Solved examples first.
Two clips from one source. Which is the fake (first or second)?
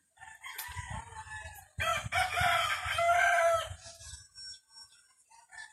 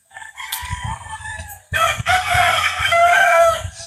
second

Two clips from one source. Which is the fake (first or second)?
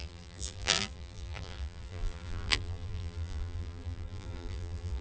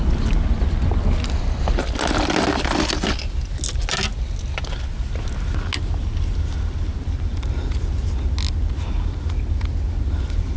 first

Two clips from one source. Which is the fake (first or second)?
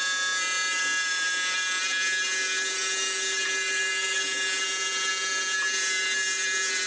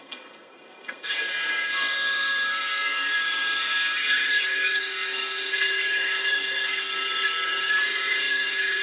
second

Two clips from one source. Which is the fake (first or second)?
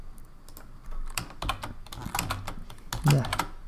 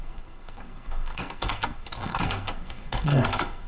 second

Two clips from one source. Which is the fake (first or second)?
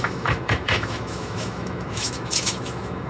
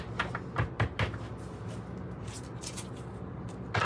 first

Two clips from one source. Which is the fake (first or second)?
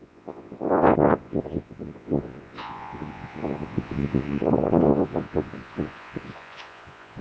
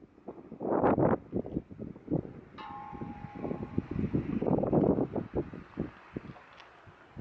first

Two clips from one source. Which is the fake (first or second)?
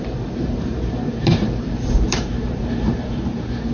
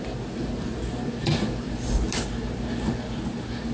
first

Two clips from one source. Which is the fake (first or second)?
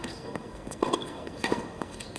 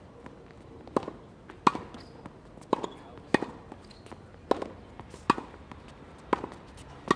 first